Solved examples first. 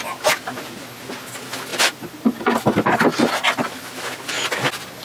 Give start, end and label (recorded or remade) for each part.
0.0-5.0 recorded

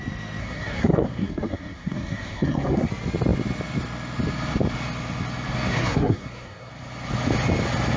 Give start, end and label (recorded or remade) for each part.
0.0-0.4 recorded; 0.4-2.9 remade; 2.9-5.7 recorded; 5.7-6.7 remade; 6.7-8.0 recorded